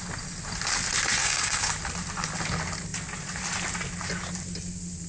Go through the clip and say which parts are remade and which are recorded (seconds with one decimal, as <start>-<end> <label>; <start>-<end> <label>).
0.0-1.2 recorded; 1.2-1.7 remade; 1.7-5.1 recorded